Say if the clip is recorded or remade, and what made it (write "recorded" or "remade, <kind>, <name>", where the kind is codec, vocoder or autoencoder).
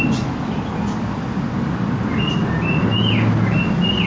recorded